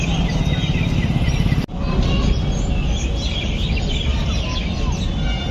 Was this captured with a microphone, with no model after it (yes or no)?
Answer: yes